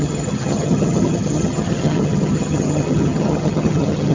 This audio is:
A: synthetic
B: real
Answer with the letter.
A